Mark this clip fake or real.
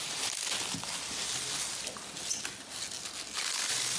real